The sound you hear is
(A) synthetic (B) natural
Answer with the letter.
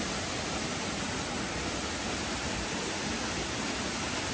B